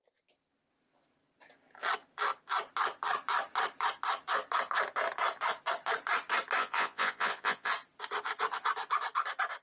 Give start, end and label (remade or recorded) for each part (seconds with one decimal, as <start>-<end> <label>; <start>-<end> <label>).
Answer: 0.0-6.6 recorded; 6.6-7.7 remade; 7.7-9.6 recorded